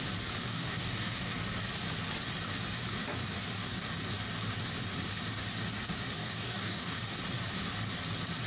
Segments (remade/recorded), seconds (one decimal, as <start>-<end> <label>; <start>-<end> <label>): 0.0-0.5 recorded; 0.5-1.3 remade; 1.3-6.2 recorded; 6.2-7.0 remade; 7.0-8.5 recorded